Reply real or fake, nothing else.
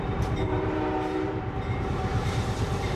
fake